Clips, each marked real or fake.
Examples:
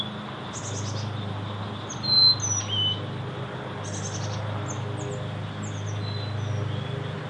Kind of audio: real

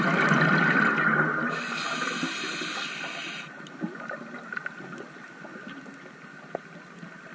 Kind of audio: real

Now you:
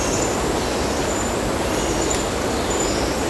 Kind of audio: real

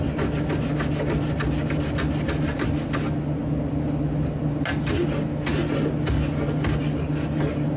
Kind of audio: real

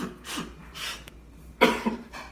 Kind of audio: fake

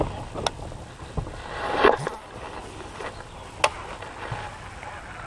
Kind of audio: real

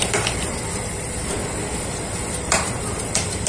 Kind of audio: fake